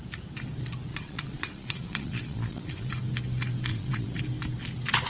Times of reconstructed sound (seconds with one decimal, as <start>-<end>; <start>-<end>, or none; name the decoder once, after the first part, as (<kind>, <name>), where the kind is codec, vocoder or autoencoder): 0.9-2.9 (vocoder, Vocos); 3.7-4.2